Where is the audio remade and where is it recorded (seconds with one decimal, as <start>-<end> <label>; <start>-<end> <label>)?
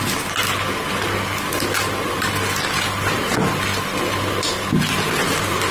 0.0-5.7 recorded